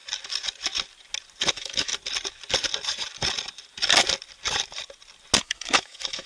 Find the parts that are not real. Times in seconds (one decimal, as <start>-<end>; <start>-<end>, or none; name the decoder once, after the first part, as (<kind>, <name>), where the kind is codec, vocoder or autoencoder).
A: 1.5-1.9 (autoencoder, DAC-VAE); 5.4-6.3